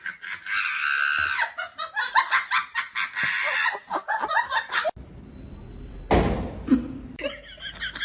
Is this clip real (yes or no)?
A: yes